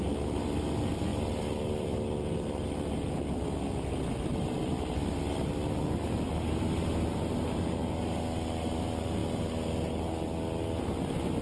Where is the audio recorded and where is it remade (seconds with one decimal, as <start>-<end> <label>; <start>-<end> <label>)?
0.0-1.1 recorded; 1.1-3.7 remade; 3.7-11.4 recorded